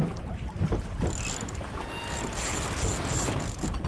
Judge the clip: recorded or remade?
recorded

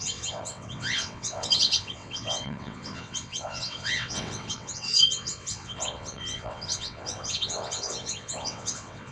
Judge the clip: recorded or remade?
remade